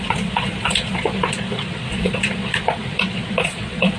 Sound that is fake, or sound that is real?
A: fake